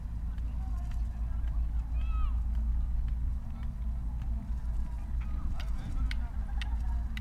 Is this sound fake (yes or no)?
no